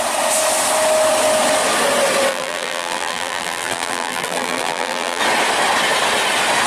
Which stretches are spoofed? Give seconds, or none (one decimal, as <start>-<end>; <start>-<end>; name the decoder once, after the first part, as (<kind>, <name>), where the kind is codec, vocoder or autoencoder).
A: 2.3-5.2 (vocoder, BigVGAN v2)